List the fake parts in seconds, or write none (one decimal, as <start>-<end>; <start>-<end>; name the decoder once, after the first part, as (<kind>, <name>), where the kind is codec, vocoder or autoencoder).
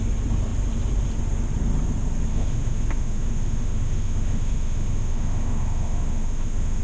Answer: 2.3-6.8 (autoencoder, DAC-VAE)